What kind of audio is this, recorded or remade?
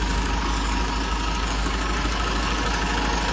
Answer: remade